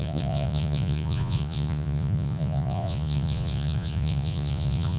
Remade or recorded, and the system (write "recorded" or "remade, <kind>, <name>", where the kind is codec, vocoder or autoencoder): remade, vocoder, Vocos